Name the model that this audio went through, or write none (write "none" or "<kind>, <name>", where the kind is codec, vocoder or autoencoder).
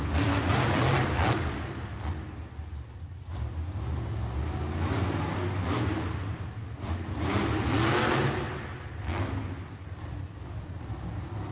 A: none